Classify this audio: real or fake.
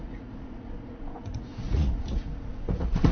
fake